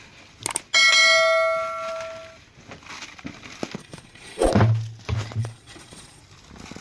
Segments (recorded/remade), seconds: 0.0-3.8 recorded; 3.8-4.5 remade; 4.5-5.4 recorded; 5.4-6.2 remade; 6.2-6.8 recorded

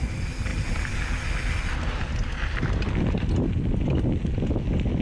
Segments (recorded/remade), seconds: 0.0-5.0 recorded

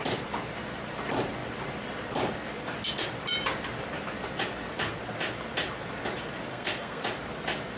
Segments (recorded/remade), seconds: 0.0-6.5 recorded; 6.5-7.0 remade; 7.0-7.8 recorded

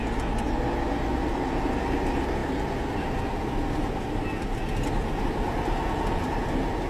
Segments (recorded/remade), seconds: 0.0-6.9 recorded

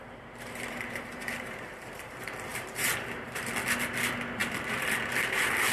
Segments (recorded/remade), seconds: 0.0-2.1 remade; 2.1-2.5 recorded; 2.5-3.5 remade; 3.5-5.7 recorded

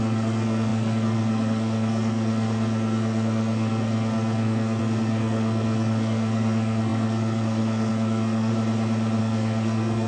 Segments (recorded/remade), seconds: 0.0-8.5 remade; 8.5-9.2 recorded; 9.2-10.1 remade